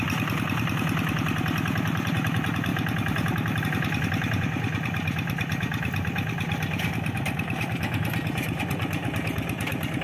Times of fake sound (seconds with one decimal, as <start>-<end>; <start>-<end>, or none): none